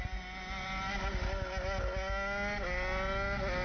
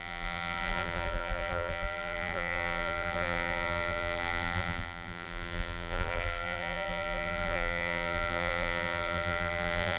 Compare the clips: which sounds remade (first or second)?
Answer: second